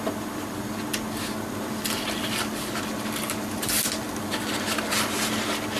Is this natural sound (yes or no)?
yes